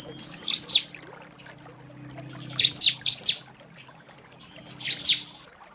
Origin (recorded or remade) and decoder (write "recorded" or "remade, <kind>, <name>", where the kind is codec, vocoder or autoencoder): recorded